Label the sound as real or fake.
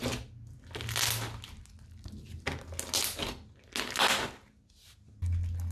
real